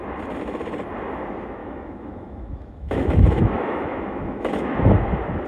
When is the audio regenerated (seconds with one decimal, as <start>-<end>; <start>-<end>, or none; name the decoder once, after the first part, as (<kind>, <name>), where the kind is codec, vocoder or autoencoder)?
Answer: 1.6-4.9 (autoencoder, DAC-VAE)